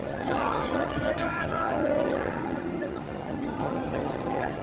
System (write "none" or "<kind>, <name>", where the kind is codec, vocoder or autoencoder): vocoder, HiFi-GAN